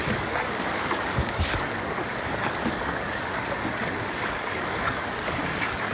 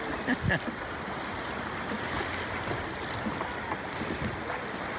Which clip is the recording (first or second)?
second